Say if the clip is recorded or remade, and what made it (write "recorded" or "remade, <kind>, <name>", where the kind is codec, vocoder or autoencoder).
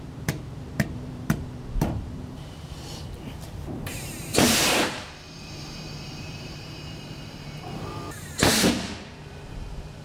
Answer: remade, vocoder, BigVGAN v2